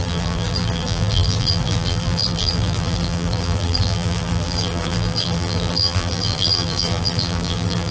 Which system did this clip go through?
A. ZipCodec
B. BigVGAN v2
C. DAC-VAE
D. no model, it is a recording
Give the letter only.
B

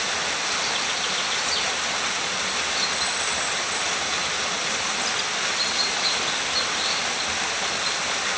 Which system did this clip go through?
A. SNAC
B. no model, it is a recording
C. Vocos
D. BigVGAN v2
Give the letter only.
B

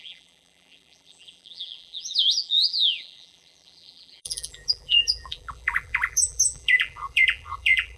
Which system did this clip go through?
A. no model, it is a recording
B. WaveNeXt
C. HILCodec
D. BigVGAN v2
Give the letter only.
D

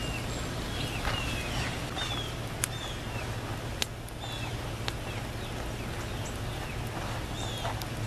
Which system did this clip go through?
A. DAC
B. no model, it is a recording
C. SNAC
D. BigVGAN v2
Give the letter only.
B